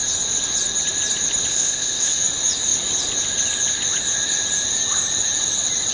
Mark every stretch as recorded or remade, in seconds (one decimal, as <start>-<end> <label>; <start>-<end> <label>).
0.0-1.5 recorded; 1.5-2.2 remade; 2.2-5.9 recorded